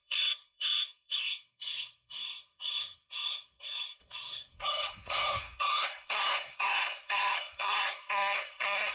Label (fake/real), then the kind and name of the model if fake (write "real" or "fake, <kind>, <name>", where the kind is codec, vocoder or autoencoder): fake, codec, SNAC